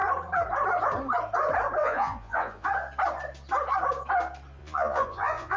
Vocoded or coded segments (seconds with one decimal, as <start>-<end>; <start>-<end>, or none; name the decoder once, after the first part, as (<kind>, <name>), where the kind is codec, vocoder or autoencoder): 1.8-2.7 (vocoder, Vocos); 4.6-5.6